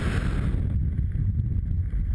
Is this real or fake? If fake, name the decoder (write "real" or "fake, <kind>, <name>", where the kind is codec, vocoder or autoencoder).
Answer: real